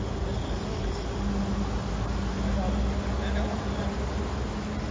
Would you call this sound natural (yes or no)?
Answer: yes